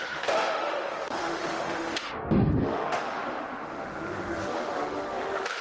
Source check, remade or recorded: remade